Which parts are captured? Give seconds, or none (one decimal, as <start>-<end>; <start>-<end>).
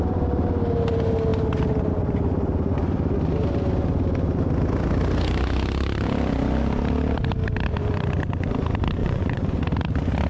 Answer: 0.0-9.0; 9.6-10.3